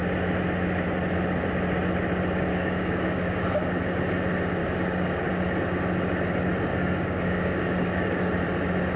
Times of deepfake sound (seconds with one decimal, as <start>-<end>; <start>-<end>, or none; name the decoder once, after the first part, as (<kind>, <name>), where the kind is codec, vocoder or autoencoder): 2.5-3.6 (codec, DAC); 4.6-5.3; 6.7-8.3